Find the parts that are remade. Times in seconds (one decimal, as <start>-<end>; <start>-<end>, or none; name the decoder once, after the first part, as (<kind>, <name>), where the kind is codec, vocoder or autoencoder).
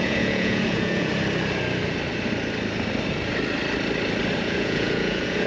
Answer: 0.0-1.1 (vocoder, Vocos); 4.4-5.5